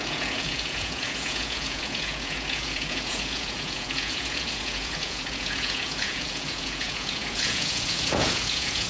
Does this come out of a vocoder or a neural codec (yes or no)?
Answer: yes